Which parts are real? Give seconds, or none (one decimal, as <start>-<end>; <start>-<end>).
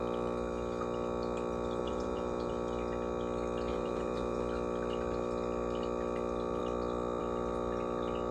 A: 0.0-1.8; 2.5-3.7; 4.4-8.3